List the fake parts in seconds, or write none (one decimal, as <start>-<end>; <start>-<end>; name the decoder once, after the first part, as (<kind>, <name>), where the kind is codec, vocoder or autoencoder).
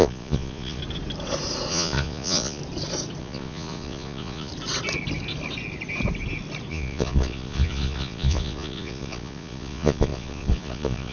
0.0-0.8 (vocoder, Vocos); 1.7-2.6; 3.2-4.5; 6.7-11.1